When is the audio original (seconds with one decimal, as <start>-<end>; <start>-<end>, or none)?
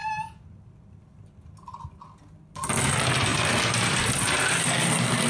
0.0-5.3